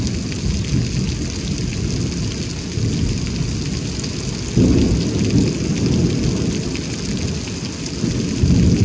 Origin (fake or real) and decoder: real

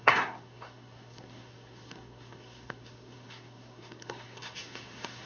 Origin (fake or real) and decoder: fake, codec, SNAC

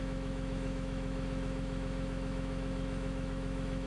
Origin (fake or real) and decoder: fake, autoencoder, DAC-VAE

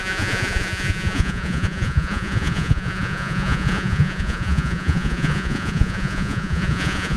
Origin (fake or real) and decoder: fake, vocoder, Vocos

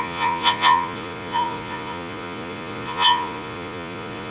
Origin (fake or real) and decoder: fake, vocoder, Vocos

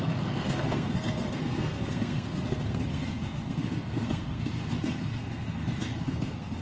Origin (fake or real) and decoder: fake, codec, SNAC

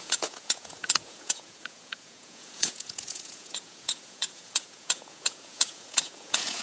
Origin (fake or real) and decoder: fake, vocoder, Vocos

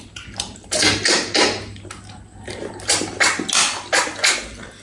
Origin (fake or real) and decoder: real